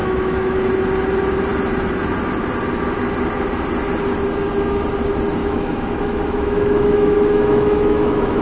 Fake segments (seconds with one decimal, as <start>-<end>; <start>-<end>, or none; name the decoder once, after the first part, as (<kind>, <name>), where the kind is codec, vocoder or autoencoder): 0.0-0.7 (autoencoder, DAC-VAE); 5.4-8.4